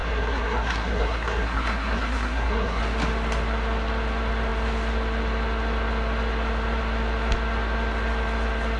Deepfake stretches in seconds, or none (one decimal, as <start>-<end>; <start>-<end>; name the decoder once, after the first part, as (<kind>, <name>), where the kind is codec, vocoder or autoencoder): 0.0-2.8 (codec, SNAC)

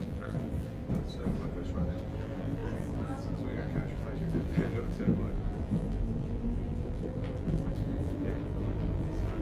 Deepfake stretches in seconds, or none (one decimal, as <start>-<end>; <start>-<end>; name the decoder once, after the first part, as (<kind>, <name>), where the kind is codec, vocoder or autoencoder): 0.0-0.8 (vocoder, BigVGAN v2); 2.0-9.4